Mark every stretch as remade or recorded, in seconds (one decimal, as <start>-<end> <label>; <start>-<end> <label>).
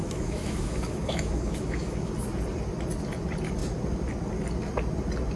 0.0-2.1 remade; 2.1-5.4 recorded